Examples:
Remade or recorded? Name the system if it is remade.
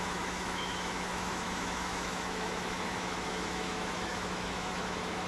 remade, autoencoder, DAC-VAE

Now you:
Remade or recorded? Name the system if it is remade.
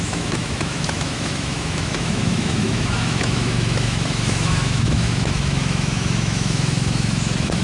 remade, autoencoder, DAC-VAE